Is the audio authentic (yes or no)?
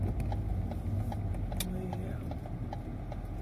yes